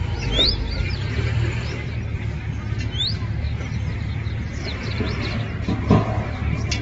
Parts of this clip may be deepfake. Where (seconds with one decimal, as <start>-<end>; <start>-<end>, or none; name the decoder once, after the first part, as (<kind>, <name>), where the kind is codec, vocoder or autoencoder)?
4.5-5.7 (vocoder, BigVGAN v2)